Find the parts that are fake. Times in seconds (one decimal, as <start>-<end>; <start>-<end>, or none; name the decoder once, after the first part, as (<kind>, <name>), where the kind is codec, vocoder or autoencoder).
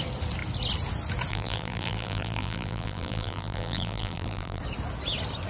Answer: 1.3-4.6 (vocoder, BigVGAN v2)